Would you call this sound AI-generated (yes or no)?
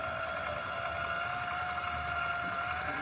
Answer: no